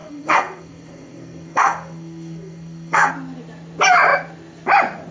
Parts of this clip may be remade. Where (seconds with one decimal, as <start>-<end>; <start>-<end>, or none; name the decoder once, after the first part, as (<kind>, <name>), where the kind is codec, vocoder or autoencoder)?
0.0-3.1 (codec, SNAC)